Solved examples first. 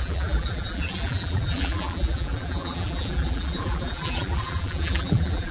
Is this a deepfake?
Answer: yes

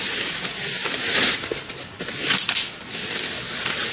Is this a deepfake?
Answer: no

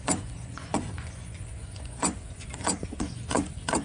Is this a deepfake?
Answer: yes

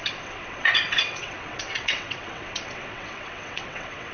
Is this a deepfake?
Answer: yes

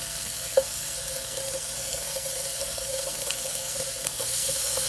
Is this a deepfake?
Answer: yes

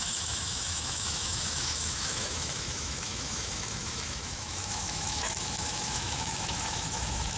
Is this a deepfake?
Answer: yes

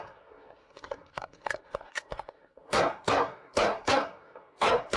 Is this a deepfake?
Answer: yes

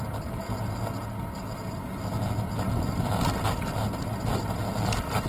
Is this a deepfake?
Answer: no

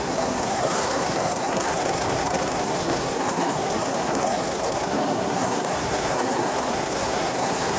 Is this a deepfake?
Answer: yes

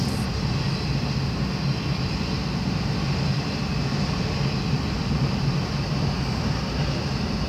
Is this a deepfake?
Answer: no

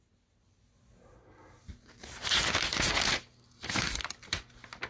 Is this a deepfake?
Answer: no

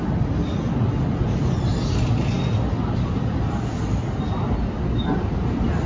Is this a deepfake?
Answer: no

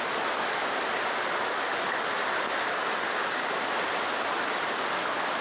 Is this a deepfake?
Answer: no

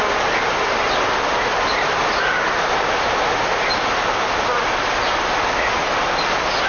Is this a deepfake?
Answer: no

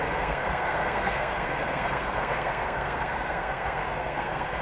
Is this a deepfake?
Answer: yes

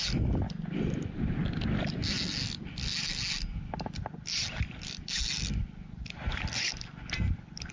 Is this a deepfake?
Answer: no